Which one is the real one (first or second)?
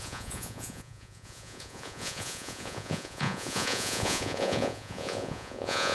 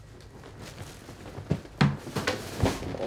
second